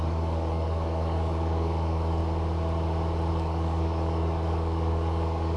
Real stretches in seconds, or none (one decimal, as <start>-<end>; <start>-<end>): 2.2-3.3